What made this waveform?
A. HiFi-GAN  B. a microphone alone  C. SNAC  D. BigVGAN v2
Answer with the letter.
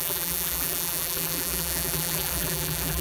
D